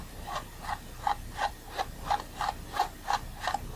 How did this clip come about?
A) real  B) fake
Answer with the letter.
A